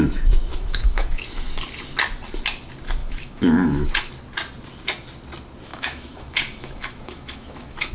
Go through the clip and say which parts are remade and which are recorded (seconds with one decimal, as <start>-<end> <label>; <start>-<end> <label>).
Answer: 0.0-0.5 recorded; 0.5-1.2 remade; 1.2-3.0 recorded; 3.0-4.1 remade; 4.1-5.7 recorded; 5.7-7.9 remade